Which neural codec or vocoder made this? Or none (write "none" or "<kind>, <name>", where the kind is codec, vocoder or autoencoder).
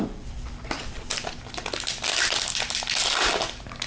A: none